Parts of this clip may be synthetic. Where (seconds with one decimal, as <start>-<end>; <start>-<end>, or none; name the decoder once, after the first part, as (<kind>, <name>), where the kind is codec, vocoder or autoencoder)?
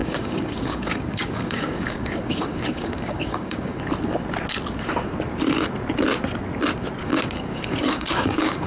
0.0-3.8 (codec, DAC); 7.0-8.7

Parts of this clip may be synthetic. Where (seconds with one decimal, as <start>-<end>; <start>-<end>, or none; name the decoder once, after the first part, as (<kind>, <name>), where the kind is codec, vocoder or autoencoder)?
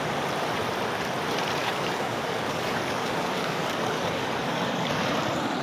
1.6-5.0 (codec, DAC)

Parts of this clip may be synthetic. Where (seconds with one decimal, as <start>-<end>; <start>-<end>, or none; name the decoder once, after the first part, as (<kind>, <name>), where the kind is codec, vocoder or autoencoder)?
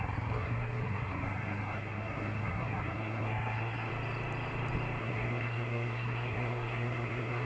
0.0-3.9 (codec, SNAC); 5.0-7.5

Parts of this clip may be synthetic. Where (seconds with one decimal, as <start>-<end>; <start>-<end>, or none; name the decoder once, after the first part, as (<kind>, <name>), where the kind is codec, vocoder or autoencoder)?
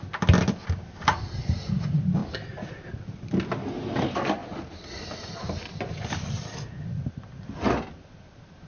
none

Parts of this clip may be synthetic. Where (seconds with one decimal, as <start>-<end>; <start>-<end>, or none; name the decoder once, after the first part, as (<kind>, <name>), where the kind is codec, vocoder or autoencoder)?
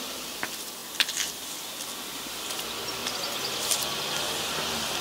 none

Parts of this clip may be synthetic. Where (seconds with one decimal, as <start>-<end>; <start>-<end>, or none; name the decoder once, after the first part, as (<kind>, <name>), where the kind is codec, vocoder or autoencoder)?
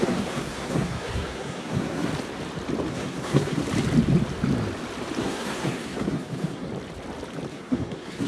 0.0-2.1 (codec, SNAC); 2.9-3.6; 5.2-6.7; 7.5-8.3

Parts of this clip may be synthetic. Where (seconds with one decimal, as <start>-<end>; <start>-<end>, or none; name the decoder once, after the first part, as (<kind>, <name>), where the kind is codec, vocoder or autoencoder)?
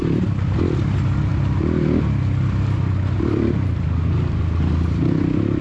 none